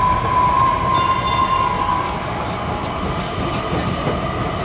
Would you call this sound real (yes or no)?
yes